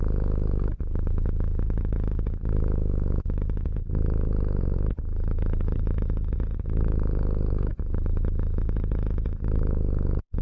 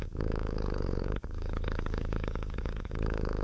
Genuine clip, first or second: first